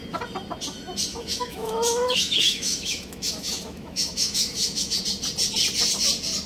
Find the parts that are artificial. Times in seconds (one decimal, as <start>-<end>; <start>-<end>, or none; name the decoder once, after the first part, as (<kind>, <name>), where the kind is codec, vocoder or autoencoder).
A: 1.1-5.0 (autoencoder, DAC-VAE)